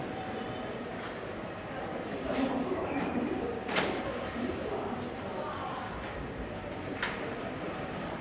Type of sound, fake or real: fake